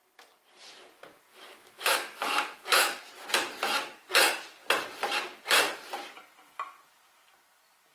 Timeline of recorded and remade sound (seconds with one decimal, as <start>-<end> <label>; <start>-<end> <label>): 0.0-1.3 recorded; 1.3-3.1 remade; 3.1-7.9 recorded

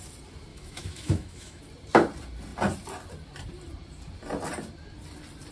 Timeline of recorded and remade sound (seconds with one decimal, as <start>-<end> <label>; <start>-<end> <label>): 0.0-0.5 recorded; 0.5-1.6 remade; 1.6-5.5 recorded

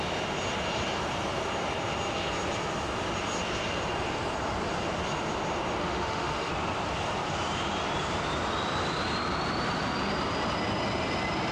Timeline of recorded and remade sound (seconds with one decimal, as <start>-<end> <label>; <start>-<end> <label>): 0.0-5.8 recorded; 5.8-6.5 remade; 6.5-11.5 recorded